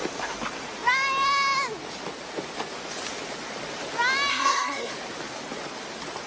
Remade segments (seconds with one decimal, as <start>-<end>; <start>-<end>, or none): 4.3-4.9